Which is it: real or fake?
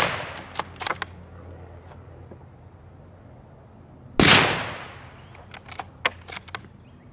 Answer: real